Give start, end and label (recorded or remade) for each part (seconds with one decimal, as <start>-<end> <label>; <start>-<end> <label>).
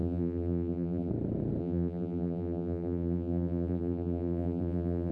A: 0.0-1.1 remade; 1.1-1.6 recorded; 1.6-5.1 remade